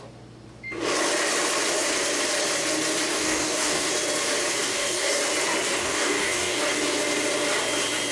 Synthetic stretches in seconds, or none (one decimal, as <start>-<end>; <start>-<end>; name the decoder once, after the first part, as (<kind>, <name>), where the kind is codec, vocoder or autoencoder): 3.1-3.9 (codec, DAC); 4.6-5.2; 5.8-6.6